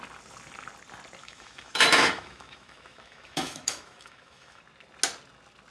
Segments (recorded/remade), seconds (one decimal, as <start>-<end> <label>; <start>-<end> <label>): 0.0-1.2 recorded; 1.2-4.6 remade; 4.6-5.7 recorded